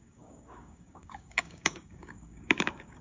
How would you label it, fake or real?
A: fake